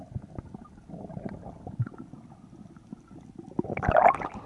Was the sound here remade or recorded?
recorded